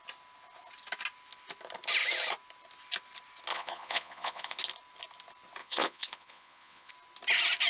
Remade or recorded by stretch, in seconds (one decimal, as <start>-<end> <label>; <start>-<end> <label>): 0.0-3.5 recorded; 3.5-4.6 remade; 4.6-5.6 recorded; 5.6-6.9 remade; 6.9-7.7 recorded